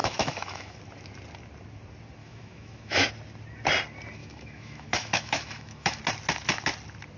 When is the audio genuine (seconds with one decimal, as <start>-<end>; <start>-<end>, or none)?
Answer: 0.8-2.2; 3.1-4.2; 6.0-7.2

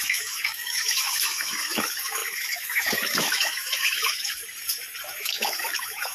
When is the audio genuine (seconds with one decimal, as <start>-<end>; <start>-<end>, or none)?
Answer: 4.4-5.1

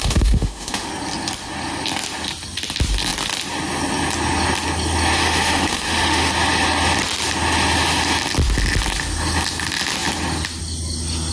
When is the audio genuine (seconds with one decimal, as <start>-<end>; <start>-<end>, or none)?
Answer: 0.9-5.2; 6.3-11.3

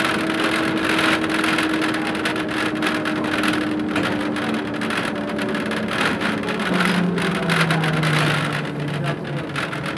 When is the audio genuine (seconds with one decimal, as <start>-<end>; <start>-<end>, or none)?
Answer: 0.0-10.0

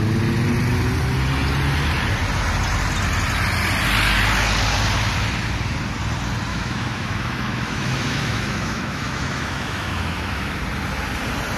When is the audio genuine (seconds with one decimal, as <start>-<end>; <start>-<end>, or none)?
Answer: 0.0-6.5; 10.6-11.6